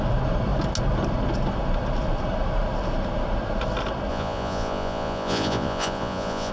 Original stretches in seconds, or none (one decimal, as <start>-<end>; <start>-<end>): 0.0-4.1